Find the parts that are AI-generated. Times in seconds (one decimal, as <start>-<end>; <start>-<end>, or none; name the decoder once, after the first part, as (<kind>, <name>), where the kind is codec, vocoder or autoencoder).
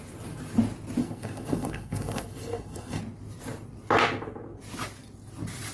1.0-3.0 (codec, SNAC)